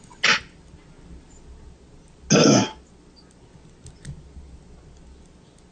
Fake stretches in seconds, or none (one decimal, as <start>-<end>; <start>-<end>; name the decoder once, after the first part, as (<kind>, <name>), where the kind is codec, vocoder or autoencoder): none